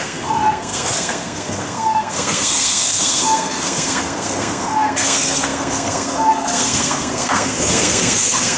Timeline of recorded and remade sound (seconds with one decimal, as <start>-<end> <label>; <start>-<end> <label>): 0.0-8.6 remade

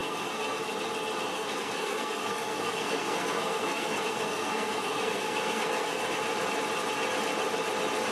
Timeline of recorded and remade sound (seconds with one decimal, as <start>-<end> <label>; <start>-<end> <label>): 0.0-0.6 remade; 0.6-1.3 recorded; 1.3-6.2 remade; 6.2-8.1 recorded